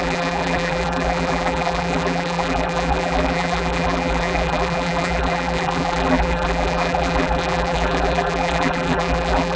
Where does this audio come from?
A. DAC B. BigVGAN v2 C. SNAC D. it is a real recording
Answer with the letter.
B